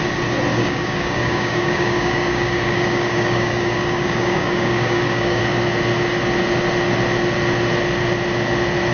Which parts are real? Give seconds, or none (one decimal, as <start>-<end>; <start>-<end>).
0.0-0.5; 5.4-8.9